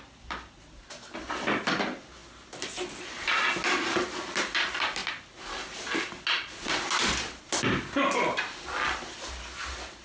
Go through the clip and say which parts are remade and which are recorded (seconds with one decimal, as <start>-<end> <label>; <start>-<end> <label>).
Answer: 0.0-10.0 recorded